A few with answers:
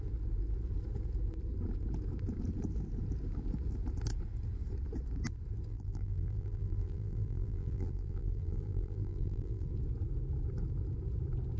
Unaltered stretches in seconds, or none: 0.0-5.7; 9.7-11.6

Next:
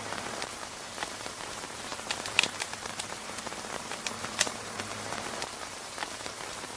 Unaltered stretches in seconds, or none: none